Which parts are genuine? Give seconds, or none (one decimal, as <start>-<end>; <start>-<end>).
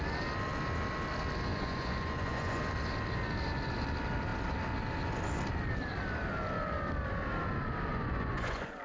0.0-1.5; 2.6-7.9